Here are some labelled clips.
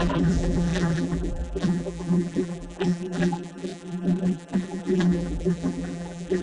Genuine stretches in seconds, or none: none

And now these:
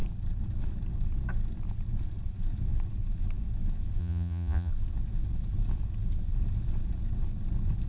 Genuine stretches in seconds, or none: 0.0-4.0; 4.7-7.9

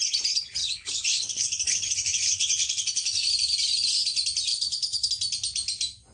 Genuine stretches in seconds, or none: 0.0-0.6; 3.3-4.5; 5.1-6.1

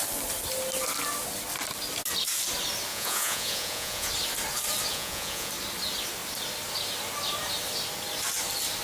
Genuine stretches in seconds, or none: 0.0-2.9; 4.1-4.9; 5.5-8.8

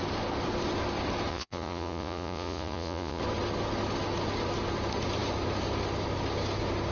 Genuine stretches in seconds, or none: 0.0-1.3; 3.2-6.9

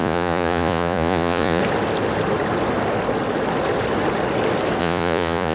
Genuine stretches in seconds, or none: 1.6-4.8

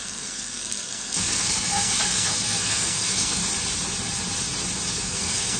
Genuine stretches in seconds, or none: 3.4-4.9

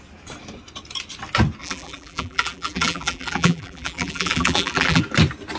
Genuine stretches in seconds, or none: 0.0-1.6; 5.0-5.6